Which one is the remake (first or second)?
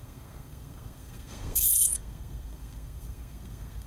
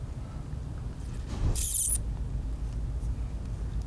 first